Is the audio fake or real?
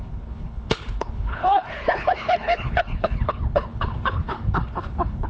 fake